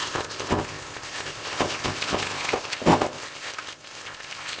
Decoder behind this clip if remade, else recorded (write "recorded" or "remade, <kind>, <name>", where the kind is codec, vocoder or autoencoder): remade, codec, ZipCodec